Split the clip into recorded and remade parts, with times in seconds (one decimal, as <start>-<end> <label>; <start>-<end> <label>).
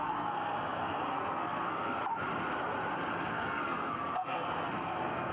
0.0-2.0 remade; 2.0-3.3 recorded; 3.3-5.3 remade